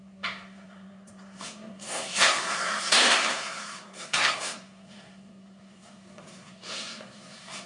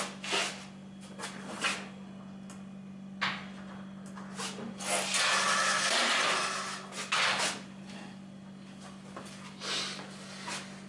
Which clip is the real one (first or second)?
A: second